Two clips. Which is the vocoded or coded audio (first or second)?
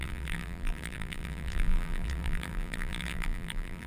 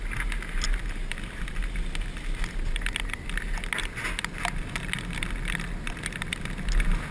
first